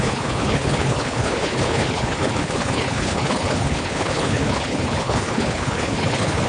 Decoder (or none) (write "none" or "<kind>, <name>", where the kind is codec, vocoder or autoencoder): codec, HILCodec